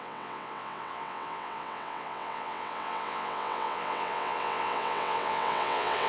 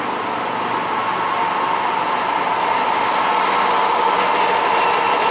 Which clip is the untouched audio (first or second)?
second